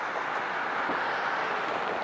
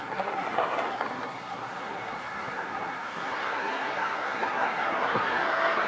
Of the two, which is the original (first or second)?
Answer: first